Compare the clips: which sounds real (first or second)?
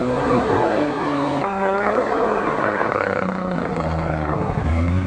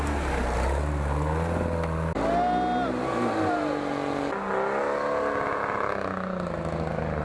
second